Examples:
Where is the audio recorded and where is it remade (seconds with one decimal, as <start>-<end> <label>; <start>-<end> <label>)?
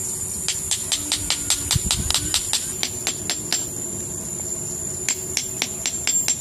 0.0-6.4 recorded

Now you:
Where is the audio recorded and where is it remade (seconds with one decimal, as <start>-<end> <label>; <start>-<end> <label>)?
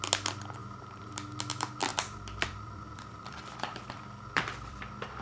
0.0-0.6 recorded; 0.6-1.1 remade; 1.1-1.9 recorded; 1.9-5.2 remade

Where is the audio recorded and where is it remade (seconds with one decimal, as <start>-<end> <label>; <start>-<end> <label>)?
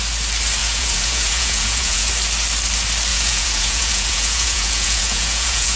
0.0-0.6 recorded; 0.6-2.1 remade; 2.1-3.1 recorded; 3.1-5.8 remade